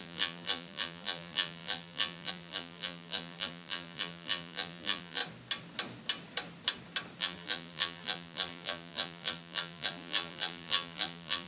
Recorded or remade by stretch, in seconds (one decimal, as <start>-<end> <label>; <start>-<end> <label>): 0.0-5.2 remade; 5.2-7.2 recorded; 7.2-11.5 remade